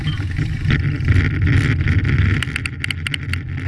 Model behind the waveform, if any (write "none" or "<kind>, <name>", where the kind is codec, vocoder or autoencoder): none